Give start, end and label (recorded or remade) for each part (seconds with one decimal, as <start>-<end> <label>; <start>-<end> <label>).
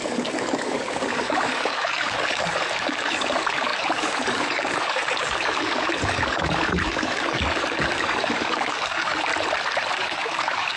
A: 0.0-9.3 remade; 9.3-9.9 recorded; 9.9-10.8 remade